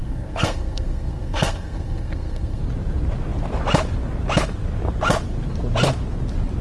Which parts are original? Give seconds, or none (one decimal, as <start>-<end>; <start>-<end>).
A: 2.6-6.6